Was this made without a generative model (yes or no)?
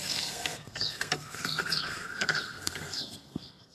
no